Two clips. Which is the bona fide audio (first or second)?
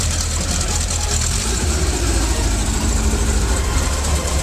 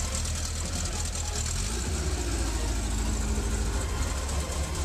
second